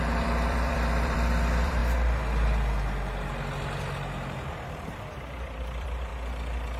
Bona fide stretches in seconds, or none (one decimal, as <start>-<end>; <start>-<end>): 1.8-4.7; 6.1-6.8